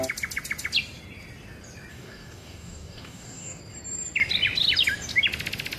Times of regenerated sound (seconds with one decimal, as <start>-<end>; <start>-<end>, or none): 1.9-3.6